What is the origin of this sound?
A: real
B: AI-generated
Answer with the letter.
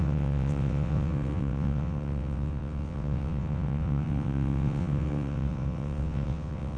B